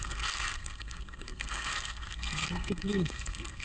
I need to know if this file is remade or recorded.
remade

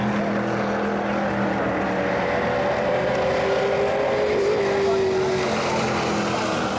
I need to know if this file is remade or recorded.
recorded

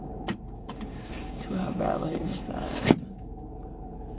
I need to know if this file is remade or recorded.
remade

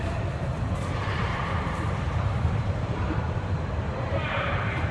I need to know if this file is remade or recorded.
remade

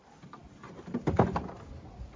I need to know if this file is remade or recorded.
recorded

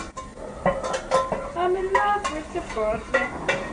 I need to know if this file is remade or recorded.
recorded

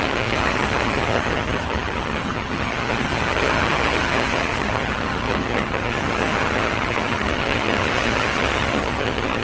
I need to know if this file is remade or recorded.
remade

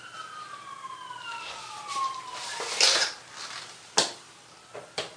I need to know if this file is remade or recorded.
recorded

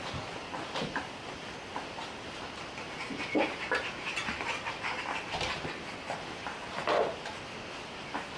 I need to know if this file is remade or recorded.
recorded